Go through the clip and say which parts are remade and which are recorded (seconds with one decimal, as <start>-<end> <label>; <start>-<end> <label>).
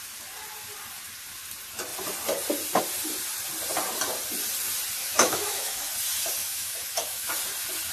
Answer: 0.0-5.0 recorded; 5.0-5.8 remade; 5.8-6.4 recorded; 6.4-7.3 remade; 7.3-7.9 recorded